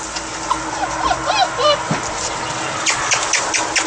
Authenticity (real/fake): real